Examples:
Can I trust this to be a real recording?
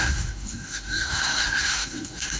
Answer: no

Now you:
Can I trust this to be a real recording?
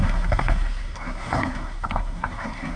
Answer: no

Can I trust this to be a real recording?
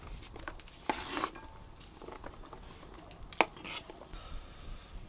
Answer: yes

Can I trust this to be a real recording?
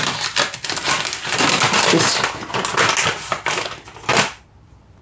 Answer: yes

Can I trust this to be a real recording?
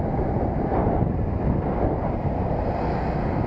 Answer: yes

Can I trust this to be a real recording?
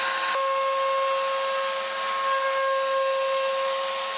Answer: yes